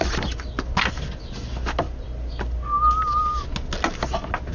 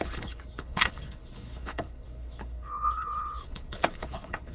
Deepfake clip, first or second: second